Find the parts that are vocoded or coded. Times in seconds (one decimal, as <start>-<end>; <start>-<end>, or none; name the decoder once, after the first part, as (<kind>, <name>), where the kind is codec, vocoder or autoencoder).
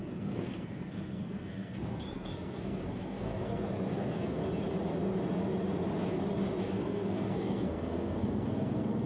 0.0-4.4 (codec, SNAC); 6.6-9.1